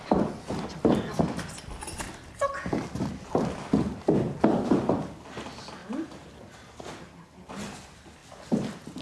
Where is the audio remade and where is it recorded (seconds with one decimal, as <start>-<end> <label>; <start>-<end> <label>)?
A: 0.0-9.0 recorded